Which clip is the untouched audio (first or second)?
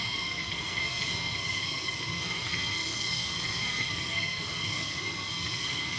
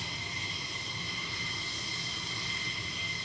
second